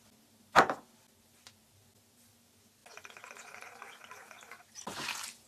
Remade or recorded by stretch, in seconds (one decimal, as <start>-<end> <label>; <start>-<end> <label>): 0.0-5.5 recorded